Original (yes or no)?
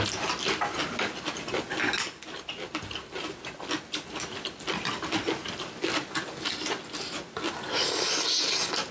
yes